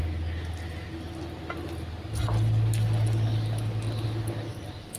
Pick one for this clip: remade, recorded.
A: recorded